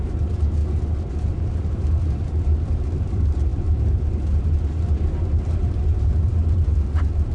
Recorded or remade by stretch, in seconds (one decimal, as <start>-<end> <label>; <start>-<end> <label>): 0.0-0.6 remade; 0.6-1.1 recorded; 1.1-7.3 remade